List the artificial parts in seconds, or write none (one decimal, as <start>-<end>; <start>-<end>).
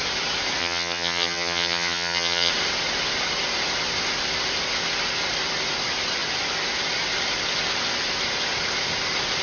0.6-2.5